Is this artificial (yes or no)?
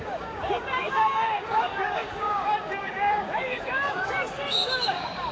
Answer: yes